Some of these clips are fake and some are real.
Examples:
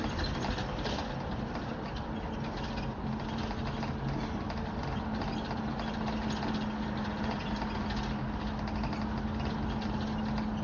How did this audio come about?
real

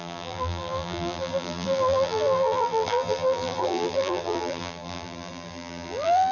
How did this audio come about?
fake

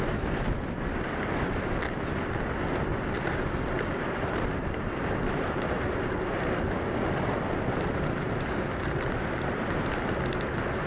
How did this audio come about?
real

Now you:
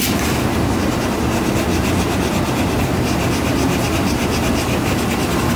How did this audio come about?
real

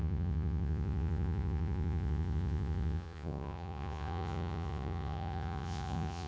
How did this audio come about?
fake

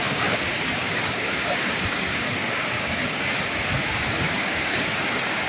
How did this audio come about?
fake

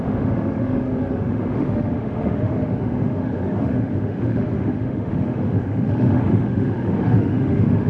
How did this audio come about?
fake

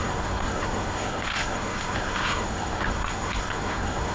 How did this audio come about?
fake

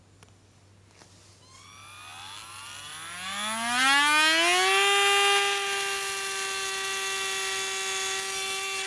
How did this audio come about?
real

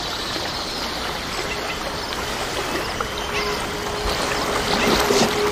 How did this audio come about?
real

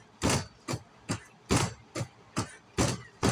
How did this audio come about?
real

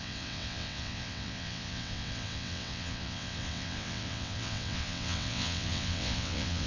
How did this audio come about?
fake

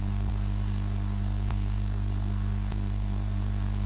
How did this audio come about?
fake